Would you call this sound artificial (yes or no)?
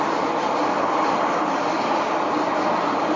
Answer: no